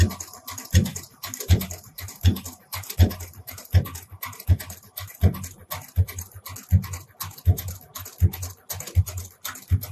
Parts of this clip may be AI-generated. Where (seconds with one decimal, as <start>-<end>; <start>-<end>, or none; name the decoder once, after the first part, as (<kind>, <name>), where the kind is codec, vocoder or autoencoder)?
0.9-5.2 (vocoder, BigVGAN v2)